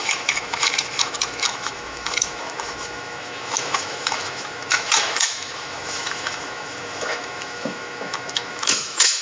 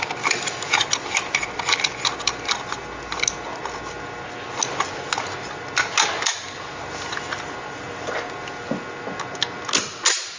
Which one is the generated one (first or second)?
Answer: first